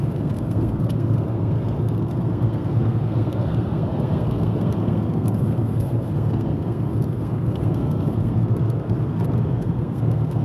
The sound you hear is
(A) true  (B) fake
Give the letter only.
B